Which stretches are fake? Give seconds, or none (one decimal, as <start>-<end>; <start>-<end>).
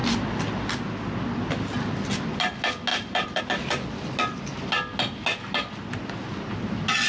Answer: 2.9-3.4